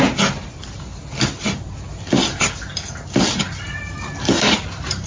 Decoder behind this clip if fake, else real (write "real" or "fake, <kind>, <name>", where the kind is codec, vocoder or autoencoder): real